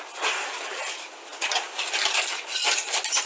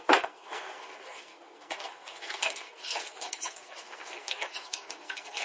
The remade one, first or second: second